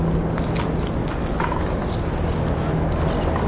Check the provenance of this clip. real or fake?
real